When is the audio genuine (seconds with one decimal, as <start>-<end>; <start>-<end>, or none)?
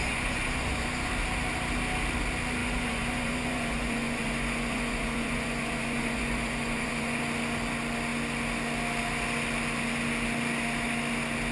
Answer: 1.1-2.6; 7.2-11.5